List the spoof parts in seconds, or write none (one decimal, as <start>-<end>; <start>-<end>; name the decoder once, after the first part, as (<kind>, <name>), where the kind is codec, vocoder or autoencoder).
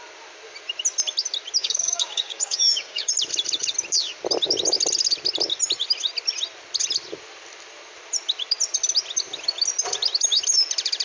1.6-3.1 (codec, DAC)